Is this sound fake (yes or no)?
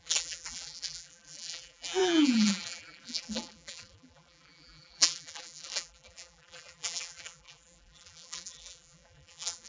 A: yes